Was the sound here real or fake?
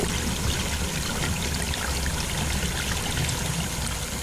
real